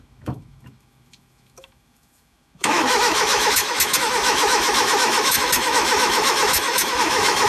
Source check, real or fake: fake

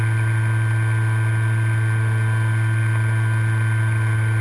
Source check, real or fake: real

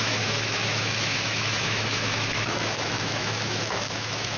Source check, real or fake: fake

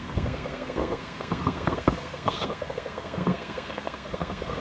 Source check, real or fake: fake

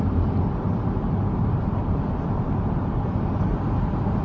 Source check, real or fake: real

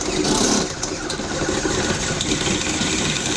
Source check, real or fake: real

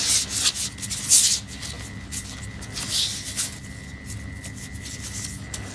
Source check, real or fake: real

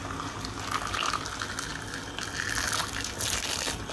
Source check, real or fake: real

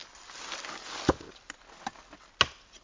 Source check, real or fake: real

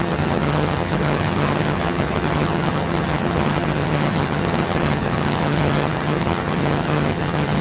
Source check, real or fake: fake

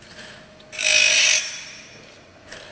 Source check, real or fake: real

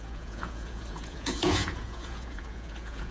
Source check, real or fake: fake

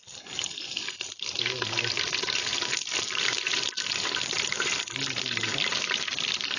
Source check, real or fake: real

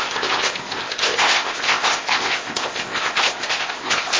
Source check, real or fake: fake